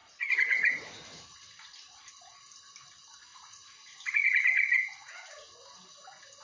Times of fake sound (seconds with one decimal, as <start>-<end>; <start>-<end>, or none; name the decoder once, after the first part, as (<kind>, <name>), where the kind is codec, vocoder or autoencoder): 0.0-2.1 (vocoder, Vocos); 3.3-5.5